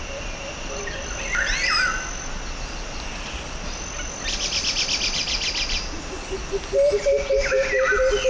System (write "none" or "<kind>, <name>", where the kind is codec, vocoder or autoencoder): none